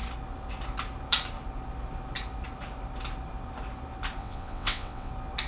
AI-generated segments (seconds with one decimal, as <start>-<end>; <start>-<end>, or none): 4.2-5.1